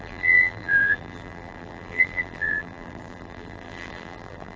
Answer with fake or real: fake